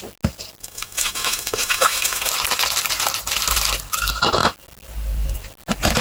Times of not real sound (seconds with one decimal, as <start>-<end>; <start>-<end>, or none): 0.6-2.3